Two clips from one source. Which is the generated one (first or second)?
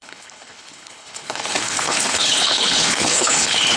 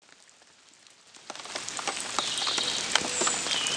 first